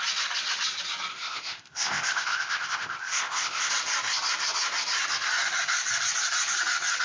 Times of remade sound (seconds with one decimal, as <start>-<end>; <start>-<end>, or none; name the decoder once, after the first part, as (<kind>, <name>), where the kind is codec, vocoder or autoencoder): 1.1-3.7 (codec, ZipCodec)